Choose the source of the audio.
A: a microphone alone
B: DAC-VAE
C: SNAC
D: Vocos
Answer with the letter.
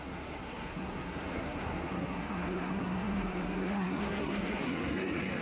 C